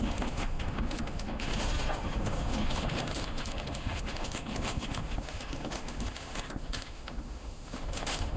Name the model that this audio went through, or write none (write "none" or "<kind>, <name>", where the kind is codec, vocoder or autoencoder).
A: autoencoder, DAC-VAE